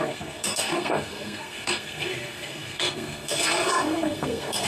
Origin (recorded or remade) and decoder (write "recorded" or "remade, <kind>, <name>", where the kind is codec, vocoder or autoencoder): remade, codec, SNAC